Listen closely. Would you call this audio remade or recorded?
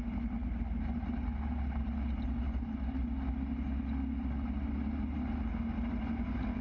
recorded